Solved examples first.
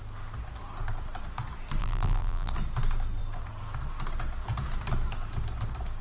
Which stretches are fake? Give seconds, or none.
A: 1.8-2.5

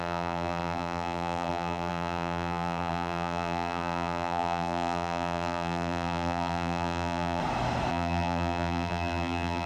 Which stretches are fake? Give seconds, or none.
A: 0.0-7.4; 7.9-9.7